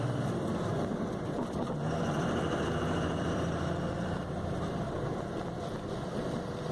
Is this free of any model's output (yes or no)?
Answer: no